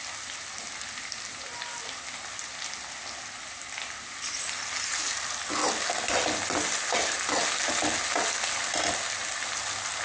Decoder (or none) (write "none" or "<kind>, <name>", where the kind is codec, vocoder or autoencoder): none